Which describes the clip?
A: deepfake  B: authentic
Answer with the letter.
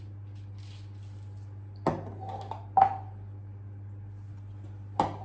B